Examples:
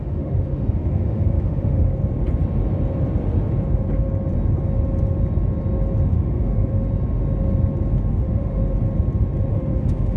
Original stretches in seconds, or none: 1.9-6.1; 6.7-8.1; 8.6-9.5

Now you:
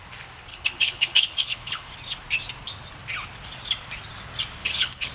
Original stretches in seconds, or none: 0.0-0.5; 1.9-4.6